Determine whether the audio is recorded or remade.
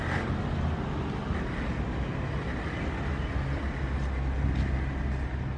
recorded